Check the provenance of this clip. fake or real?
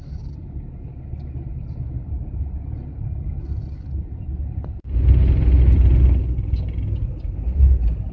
real